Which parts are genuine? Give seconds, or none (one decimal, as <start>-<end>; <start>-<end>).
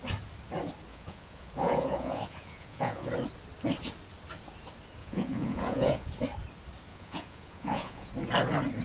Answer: 0.0-0.9; 3.1-5.0; 6.1-6.9; 8.1-8.8